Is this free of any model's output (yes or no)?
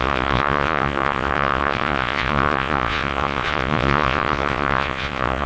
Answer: no